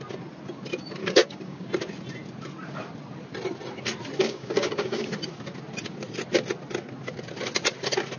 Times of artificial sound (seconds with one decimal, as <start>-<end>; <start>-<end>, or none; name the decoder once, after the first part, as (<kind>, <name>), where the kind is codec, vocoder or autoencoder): 1.0-1.7 (codec, DAC); 4.2-5.1